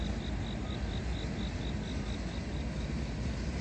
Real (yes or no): yes